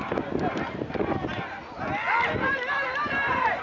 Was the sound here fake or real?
real